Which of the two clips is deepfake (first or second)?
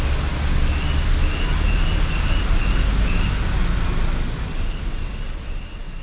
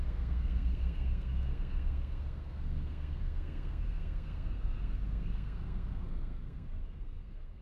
second